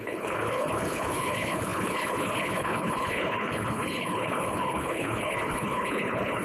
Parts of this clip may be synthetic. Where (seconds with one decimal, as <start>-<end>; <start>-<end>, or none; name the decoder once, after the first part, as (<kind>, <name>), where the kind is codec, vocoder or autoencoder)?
0.0-6.4 (codec, HILCodec)